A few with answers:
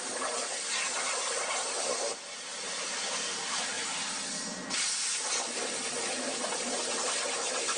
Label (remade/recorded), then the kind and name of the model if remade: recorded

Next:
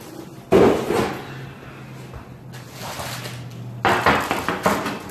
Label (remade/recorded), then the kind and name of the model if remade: recorded